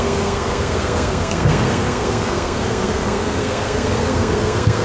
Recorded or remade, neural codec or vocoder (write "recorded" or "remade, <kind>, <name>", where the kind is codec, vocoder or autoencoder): remade, codec, SNAC